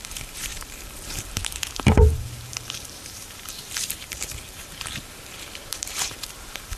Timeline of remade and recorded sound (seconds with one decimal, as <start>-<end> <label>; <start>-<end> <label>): 0.0-6.8 remade